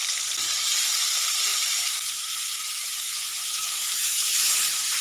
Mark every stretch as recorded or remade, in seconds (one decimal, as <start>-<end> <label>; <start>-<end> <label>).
0.0-1.5 recorded; 1.5-4.5 remade; 4.5-5.0 recorded